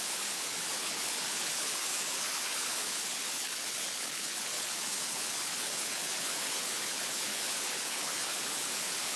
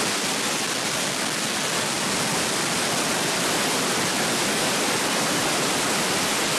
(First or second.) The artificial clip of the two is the first